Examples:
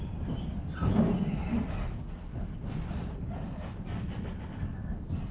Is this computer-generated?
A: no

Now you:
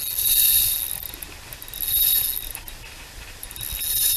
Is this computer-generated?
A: no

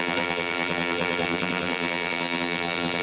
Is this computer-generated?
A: yes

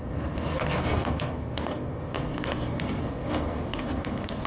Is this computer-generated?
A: yes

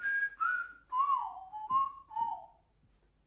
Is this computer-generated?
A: no